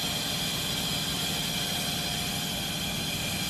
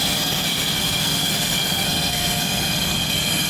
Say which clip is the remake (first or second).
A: second